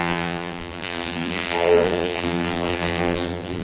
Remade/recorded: remade